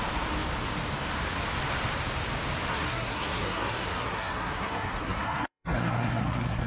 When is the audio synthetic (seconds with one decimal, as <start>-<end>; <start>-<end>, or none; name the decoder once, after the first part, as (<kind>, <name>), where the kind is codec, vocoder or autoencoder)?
2.7-6.7 (codec, SNAC)